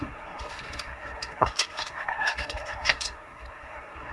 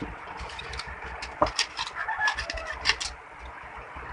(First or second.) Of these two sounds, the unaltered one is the second